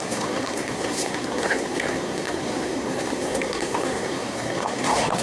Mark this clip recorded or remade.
remade